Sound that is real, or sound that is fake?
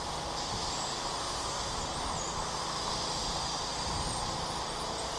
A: real